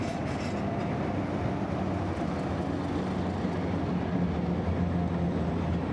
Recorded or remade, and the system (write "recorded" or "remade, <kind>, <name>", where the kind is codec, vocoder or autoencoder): recorded